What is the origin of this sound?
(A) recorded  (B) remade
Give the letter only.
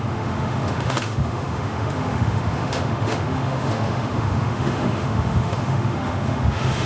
B